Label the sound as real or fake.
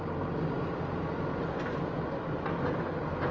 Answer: real